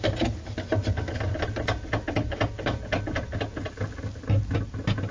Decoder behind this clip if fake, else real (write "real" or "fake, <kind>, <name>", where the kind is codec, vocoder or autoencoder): real